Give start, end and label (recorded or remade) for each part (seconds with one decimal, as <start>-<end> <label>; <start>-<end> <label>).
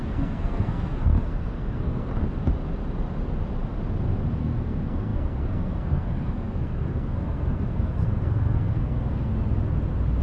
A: 0.0-2.1 remade; 2.1-4.4 recorded; 4.4-9.3 remade; 9.3-10.2 recorded